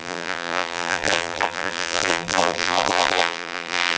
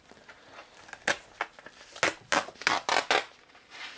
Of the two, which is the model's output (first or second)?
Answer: first